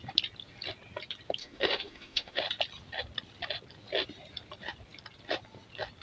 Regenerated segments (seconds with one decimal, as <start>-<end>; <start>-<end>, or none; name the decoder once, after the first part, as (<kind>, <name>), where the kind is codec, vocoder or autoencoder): 1.4-2.4 (autoencoder, DAC-VAE)

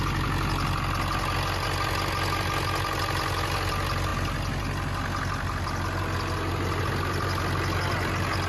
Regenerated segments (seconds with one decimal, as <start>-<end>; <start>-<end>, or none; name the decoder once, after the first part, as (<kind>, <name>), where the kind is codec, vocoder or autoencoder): none

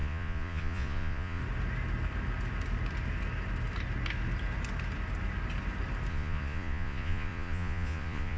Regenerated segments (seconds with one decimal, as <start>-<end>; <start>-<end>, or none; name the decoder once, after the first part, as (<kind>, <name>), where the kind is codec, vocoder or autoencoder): 0.0-1.4 (vocoder, Vocos); 6.1-8.4

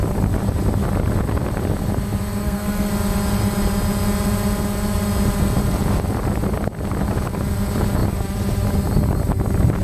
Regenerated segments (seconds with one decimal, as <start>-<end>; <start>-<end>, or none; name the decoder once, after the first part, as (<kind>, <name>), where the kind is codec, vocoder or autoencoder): 2.4-2.9 (codec, SNAC)

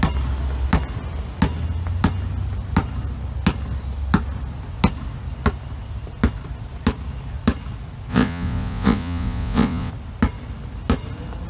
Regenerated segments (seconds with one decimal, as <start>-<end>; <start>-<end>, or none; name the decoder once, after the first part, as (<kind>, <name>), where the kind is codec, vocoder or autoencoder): 8.1-9.9 (vocoder, Vocos)

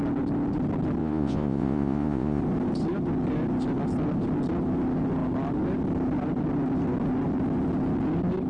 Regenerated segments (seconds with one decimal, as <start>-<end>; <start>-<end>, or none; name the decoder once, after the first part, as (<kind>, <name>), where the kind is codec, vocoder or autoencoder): 1.0-2.4 (vocoder, Vocos)

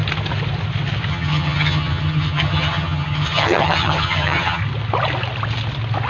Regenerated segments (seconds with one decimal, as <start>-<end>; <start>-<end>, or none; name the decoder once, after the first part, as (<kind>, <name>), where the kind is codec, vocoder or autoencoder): 1.1-4.6 (vocoder, HiFi-GAN)

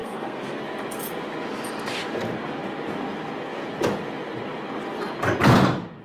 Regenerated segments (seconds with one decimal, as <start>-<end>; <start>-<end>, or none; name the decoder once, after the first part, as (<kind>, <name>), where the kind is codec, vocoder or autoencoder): 0.0-0.6 (codec, SNAC)